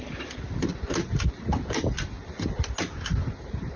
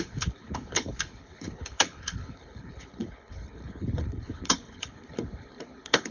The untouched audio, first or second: first